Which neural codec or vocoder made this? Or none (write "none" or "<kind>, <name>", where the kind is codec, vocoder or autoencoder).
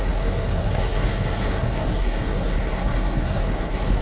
codec, SNAC